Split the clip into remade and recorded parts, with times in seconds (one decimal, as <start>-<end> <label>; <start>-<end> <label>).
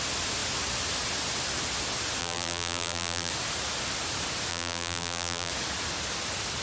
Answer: 0.0-2.2 recorded; 2.2-3.3 remade; 3.3-4.5 recorded; 4.5-5.5 remade; 5.5-6.6 recorded